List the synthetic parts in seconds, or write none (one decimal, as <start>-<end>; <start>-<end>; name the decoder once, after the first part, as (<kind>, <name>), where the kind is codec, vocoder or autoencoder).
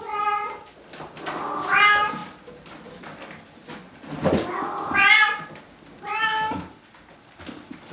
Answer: none